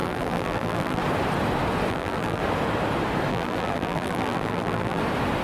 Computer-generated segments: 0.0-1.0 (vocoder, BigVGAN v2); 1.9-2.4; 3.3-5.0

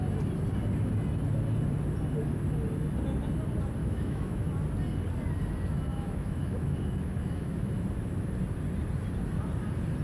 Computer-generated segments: 3.8-4.5 (autoencoder, DAC-VAE); 5.9-7.7

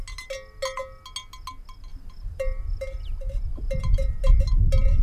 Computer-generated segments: 1.9-4.3 (vocoder, BigVGAN v2)